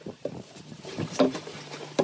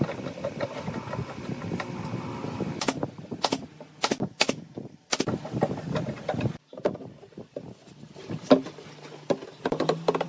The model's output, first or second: first